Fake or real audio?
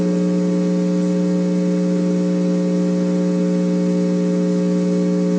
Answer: real